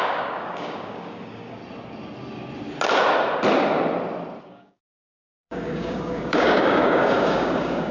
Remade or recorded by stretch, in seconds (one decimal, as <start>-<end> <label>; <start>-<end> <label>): 0.0-1.6 remade; 1.6-4.4 recorded; 4.4-7.9 remade